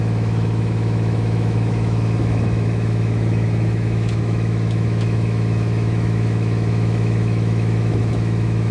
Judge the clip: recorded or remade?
remade